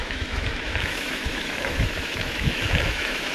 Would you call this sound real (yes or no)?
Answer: no